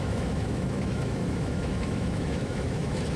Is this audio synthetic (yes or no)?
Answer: yes